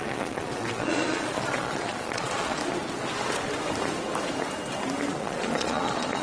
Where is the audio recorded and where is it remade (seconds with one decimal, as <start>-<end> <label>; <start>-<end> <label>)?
0.0-2.6 remade; 2.6-5.1 recorded; 5.1-6.2 remade